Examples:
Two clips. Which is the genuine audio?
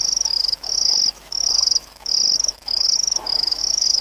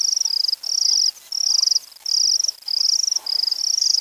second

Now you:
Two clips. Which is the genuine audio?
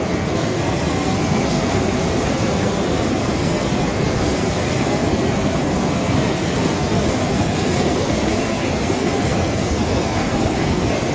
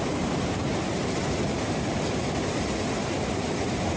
second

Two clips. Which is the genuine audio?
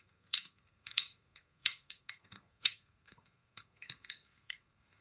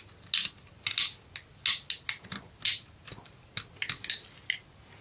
second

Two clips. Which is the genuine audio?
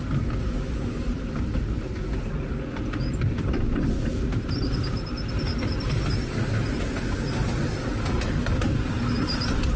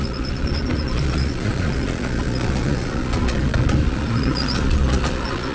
first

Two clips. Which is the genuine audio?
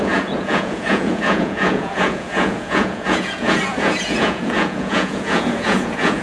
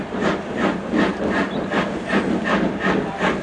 second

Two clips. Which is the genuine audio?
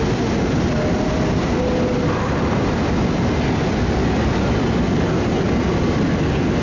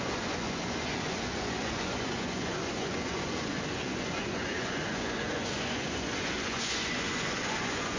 first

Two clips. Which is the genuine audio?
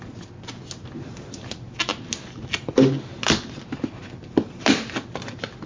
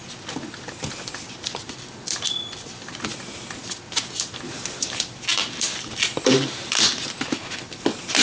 first